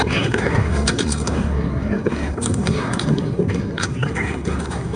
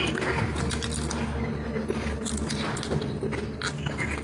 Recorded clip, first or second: second